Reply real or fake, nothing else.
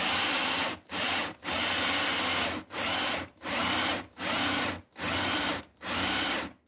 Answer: real